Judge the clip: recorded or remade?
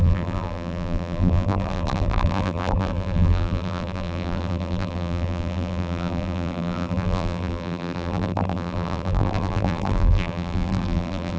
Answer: remade